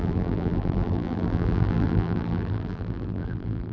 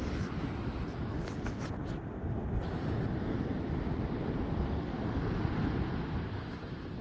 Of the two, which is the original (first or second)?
second